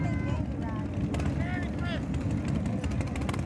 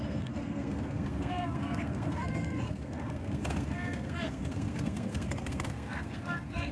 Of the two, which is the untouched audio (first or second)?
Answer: first